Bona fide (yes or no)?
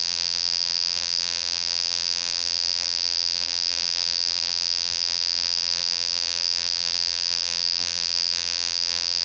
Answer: no